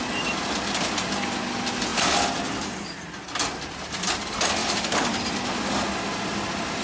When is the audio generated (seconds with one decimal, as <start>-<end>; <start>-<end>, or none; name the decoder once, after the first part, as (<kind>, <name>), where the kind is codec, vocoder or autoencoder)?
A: none